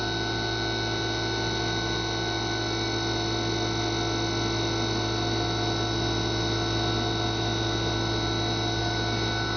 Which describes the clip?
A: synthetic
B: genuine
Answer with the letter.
B